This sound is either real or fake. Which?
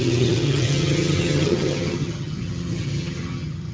fake